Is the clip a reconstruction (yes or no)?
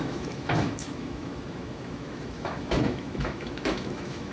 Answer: yes